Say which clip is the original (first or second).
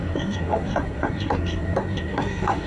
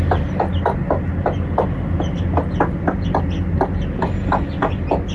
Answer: second